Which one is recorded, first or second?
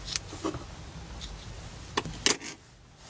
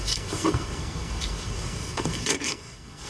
first